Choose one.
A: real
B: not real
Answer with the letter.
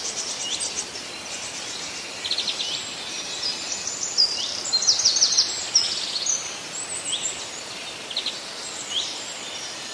A